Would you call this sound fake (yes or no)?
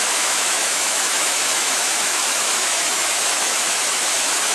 yes